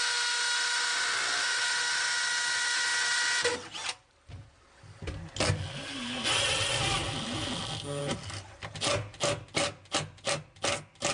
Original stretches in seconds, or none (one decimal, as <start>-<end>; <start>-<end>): 0.0-11.1